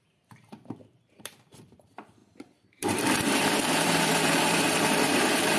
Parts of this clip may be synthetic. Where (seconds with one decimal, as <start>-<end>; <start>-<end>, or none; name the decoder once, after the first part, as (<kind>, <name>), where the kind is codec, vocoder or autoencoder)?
0.0-5.6 (vocoder, BigVGAN v2)